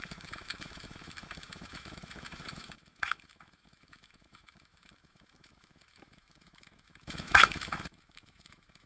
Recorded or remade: remade